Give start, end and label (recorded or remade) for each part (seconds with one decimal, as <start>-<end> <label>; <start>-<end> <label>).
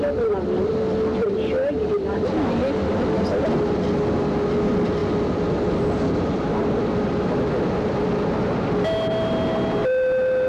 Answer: 0.0-9.8 recorded; 9.8-10.5 remade